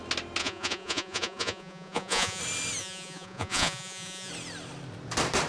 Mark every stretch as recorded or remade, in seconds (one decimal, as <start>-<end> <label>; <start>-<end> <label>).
0.0-0.4 recorded; 0.4-2.4 remade; 2.4-2.8 recorded; 2.8-4.3 remade; 4.3-5.5 recorded